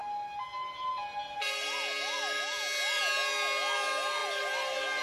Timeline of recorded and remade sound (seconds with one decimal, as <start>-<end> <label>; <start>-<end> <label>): 0.0-5.0 recorded